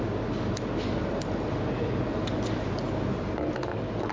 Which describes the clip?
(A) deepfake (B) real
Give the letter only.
B